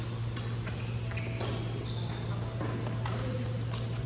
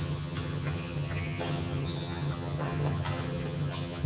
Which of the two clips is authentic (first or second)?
first